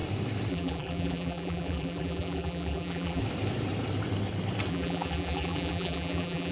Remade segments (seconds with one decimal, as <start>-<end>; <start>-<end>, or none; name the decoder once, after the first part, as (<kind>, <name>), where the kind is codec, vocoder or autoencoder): 0.5-3.2 (vocoder, BigVGAN v2); 4.7-6.5